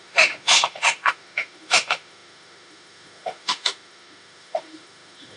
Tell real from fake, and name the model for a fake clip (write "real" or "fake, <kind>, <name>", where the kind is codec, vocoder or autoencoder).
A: fake, autoencoder, DAC-VAE